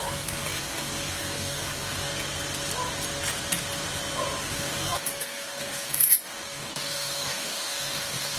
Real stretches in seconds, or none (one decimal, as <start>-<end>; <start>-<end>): 2.1-4.4